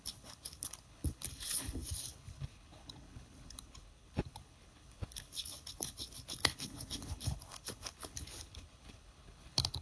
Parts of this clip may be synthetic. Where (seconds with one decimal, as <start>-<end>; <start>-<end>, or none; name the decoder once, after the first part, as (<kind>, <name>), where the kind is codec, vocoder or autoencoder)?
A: 0.0-9.8 (codec, HILCodec)